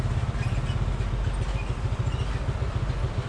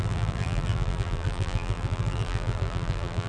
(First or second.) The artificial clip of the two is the second